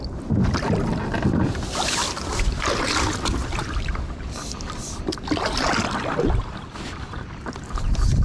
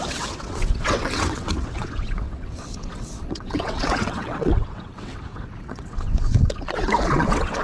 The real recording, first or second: first